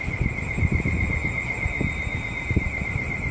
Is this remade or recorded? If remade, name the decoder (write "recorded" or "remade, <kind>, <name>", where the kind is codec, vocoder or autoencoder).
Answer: recorded